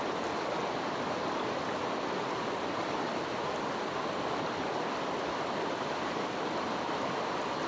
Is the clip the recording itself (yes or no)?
yes